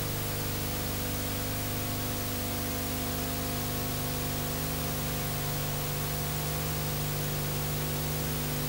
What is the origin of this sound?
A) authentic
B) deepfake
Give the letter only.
A